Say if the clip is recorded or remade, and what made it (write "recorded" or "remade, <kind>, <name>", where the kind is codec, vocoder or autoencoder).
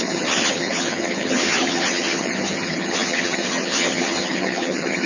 remade, vocoder, HiFi-GAN